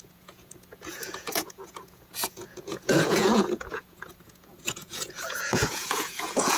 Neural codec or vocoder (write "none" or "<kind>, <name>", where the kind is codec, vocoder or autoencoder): vocoder, Vocos